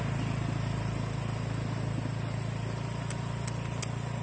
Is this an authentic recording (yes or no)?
yes